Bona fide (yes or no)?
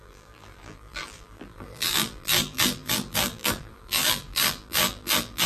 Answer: no